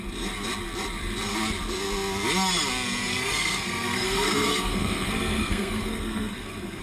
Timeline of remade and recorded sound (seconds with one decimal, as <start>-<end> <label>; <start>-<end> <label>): 0.0-3.1 recorded; 3.1-6.8 remade